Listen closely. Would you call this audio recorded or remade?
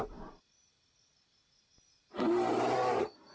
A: recorded